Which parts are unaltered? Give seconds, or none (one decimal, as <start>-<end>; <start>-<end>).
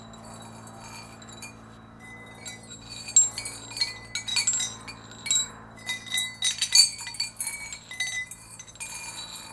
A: 0.0-9.5